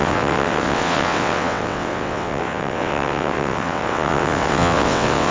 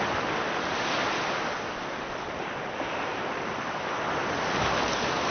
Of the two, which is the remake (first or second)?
first